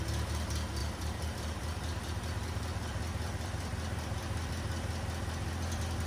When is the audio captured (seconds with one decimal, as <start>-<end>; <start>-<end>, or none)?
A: 0.0-0.8; 4.5-6.1